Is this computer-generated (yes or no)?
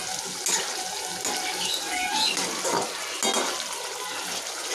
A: no